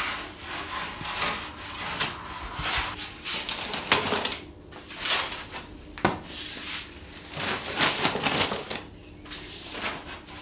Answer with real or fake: real